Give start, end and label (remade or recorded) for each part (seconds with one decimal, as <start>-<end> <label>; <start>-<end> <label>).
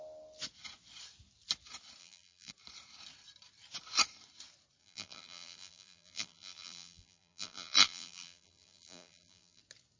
0.0-2.0 recorded; 2.0-2.5 remade; 2.5-4.8 recorded; 4.8-9.6 remade; 9.6-10.0 recorded